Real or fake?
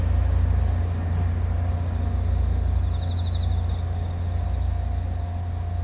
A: real